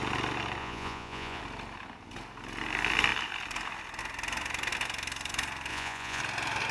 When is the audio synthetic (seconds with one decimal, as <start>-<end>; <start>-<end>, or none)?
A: 0.6-1.4; 5.7-6.2